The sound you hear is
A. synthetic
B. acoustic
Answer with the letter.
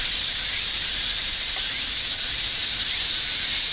A